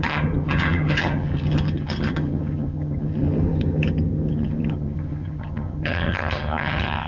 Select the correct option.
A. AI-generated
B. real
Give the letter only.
A